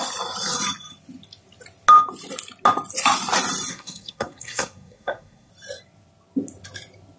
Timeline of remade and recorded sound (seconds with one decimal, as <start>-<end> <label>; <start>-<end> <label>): 0.0-3.7 recorded; 3.7-5.5 remade; 5.5-7.2 recorded